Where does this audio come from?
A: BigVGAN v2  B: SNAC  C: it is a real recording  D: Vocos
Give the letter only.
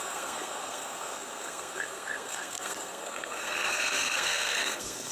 B